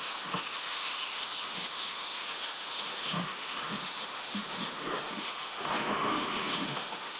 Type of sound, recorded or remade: remade